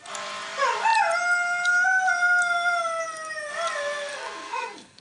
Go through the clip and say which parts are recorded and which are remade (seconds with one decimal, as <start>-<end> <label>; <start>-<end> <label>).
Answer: 0.0-4.1 recorded; 4.1-5.0 remade